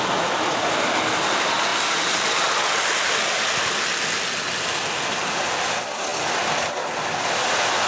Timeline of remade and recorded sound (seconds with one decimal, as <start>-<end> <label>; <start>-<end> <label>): 0.0-7.9 recorded